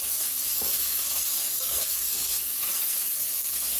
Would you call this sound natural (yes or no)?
no